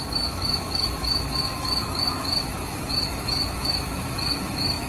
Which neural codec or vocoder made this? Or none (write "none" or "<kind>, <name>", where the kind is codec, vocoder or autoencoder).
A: autoencoder, DAC-VAE